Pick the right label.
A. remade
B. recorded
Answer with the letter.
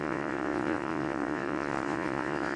A